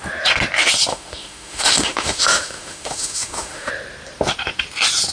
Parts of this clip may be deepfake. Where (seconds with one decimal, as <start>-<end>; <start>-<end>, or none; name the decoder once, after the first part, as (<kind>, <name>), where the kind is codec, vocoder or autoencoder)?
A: 0.9-3.7 (autoencoder, DAC-VAE)